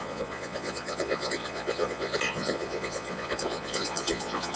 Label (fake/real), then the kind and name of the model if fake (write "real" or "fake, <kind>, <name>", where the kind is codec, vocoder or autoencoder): fake, vocoder, Vocos